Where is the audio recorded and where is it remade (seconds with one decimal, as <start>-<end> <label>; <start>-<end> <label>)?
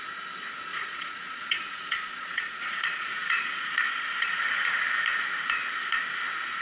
0.0-0.7 recorded; 0.7-4.7 remade; 4.7-6.6 recorded